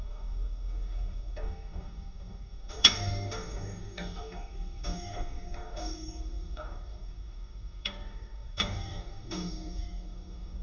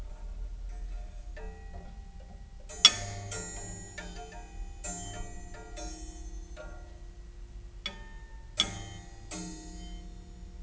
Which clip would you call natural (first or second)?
second